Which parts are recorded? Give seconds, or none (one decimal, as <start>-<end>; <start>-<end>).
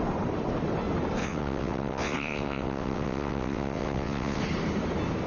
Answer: 0.0-1.2; 4.4-5.3